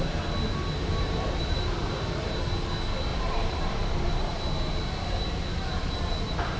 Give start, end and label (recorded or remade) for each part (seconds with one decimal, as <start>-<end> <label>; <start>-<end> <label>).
0.0-0.8 recorded; 0.8-2.4 remade; 2.4-3.1 recorded; 3.1-4.3 remade; 4.3-6.6 recorded